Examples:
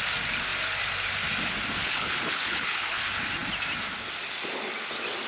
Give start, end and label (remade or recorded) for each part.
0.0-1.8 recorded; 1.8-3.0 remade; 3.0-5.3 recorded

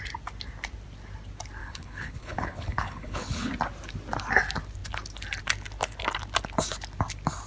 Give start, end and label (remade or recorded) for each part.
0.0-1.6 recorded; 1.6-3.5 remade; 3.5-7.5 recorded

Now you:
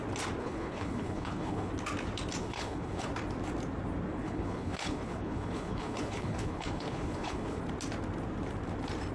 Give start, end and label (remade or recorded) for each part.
0.0-0.4 recorded; 0.4-1.7 remade; 1.7-2.4 recorded; 2.4-3.1 remade; 3.1-4.2 recorded; 4.2-7.6 remade; 7.6-9.1 recorded

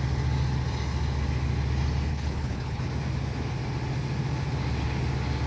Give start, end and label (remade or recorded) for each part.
0.0-2.1 recorded; 2.1-2.9 remade; 2.9-5.5 recorded

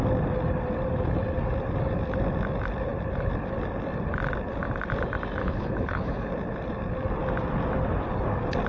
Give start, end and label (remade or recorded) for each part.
0.0-5.4 recorded; 5.4-6.3 remade; 6.3-8.7 recorded

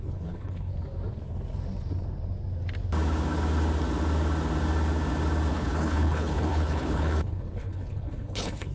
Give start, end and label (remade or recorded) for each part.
0.0-0.7 remade; 0.7-5.5 recorded; 5.5-8.7 remade